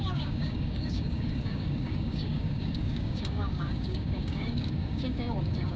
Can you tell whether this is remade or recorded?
remade